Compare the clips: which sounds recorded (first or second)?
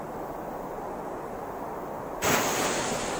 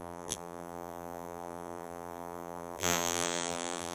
first